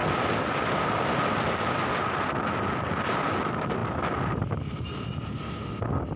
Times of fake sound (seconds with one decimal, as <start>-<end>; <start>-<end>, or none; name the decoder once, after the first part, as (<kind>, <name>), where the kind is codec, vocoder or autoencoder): none